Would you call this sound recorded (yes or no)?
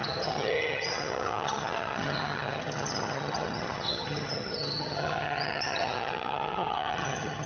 no